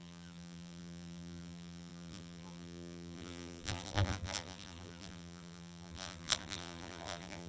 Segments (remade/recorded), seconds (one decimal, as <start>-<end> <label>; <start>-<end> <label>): 0.0-7.5 remade